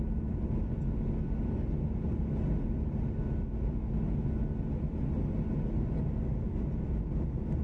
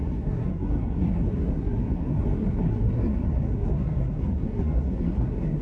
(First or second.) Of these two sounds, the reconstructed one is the second